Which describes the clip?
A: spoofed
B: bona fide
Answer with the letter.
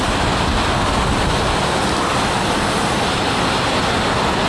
B